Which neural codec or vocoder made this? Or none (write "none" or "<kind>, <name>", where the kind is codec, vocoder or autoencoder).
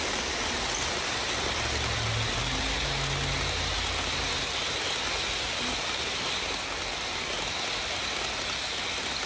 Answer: none